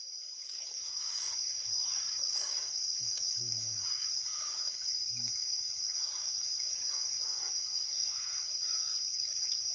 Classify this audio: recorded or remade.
remade